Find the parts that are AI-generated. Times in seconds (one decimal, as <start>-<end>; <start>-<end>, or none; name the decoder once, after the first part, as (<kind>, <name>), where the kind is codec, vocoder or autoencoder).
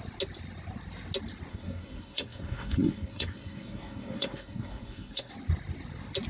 1.5-5.3 (codec, SNAC)